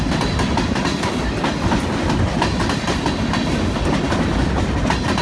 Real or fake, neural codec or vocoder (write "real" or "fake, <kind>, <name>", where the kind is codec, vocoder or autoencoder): real